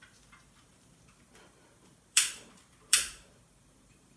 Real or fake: fake